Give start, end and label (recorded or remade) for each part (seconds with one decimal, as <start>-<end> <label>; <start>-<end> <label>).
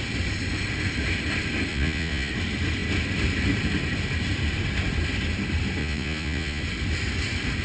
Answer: 0.0-1.7 recorded; 1.7-2.3 remade; 2.3-5.8 recorded; 5.8-6.6 remade; 6.6-7.6 recorded